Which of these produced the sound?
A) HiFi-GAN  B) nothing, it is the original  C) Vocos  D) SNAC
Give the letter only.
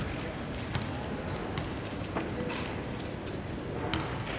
B